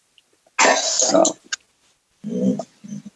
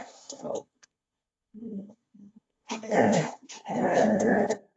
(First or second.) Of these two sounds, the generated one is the second